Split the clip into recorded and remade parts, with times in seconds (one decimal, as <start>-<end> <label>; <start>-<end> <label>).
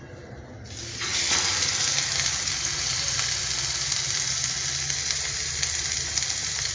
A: 0.0-6.7 recorded